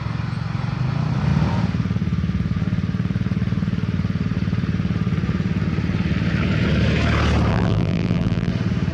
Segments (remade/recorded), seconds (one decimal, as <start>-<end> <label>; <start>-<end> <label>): 0.0-7.5 recorded; 7.5-8.5 remade; 8.5-8.9 recorded